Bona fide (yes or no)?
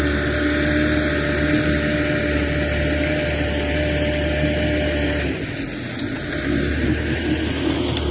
yes